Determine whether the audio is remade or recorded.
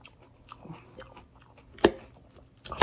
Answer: recorded